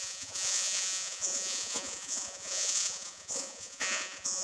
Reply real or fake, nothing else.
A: fake